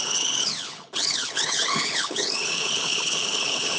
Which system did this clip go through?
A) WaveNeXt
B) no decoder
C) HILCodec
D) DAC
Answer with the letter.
C